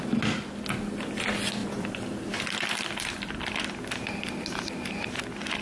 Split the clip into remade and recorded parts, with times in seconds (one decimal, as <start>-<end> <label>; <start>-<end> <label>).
0.0-1.6 recorded; 1.6-4.9 remade; 4.9-5.6 recorded